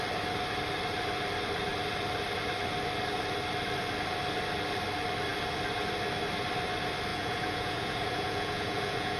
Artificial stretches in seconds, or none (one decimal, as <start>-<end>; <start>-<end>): 7.1-9.2